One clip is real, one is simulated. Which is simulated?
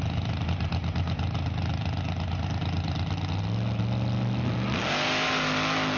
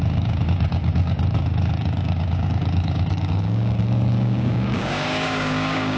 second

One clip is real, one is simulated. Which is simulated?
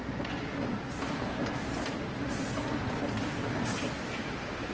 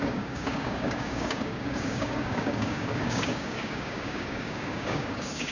second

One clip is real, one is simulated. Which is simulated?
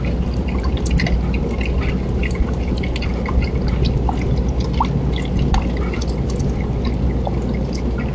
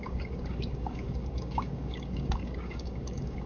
second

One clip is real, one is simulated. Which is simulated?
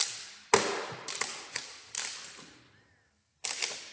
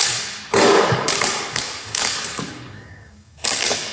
second